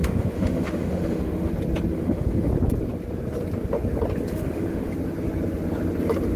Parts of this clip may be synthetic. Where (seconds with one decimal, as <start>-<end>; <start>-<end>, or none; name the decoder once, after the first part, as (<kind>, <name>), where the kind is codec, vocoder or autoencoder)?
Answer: 0.0-1.5 (autoencoder, DAC-VAE); 1.9-2.5; 4.3-4.9